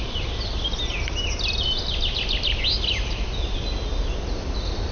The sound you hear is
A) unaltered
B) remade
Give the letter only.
A